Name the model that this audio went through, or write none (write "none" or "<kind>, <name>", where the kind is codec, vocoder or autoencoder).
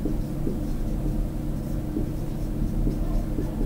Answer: none